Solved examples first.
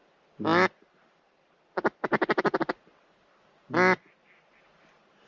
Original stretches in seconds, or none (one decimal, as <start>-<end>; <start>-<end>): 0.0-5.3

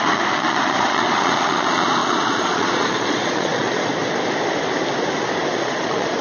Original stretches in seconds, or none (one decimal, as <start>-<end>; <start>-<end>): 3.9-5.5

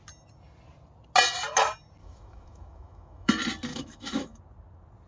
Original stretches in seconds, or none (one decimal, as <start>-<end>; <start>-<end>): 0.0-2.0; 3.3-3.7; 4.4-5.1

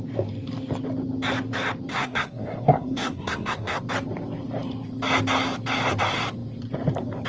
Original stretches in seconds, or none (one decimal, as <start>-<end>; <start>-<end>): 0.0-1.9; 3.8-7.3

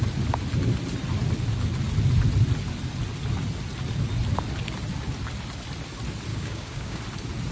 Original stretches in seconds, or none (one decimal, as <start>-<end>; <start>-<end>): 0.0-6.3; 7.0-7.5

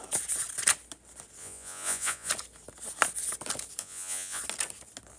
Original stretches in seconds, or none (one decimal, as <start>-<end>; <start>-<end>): 0.0-1.4; 2.3-3.8; 4.4-5.2

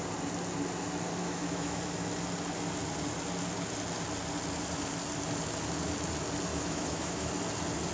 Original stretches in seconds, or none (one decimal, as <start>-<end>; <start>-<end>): 0.0-1.2; 1.8-6.5; 7.3-7.9